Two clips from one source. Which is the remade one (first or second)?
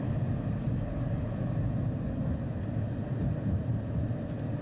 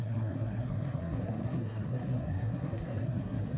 second